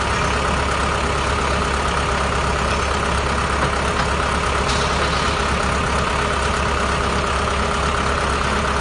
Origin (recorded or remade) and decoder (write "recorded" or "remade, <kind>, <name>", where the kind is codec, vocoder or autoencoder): recorded